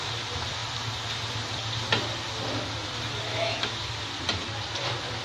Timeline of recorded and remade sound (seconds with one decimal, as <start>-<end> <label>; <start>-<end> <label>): 0.0-3.3 recorded; 3.3-3.9 remade; 3.9-5.2 recorded